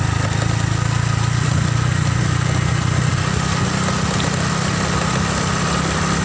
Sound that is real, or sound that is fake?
real